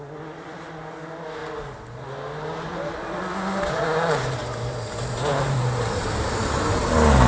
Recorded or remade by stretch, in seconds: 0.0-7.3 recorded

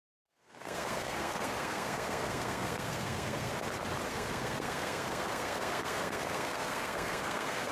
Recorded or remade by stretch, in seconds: 0.0-3.5 remade; 3.5-4.1 recorded; 4.1-7.7 remade